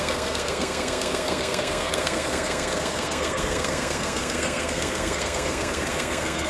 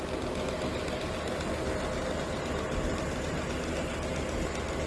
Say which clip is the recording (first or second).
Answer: second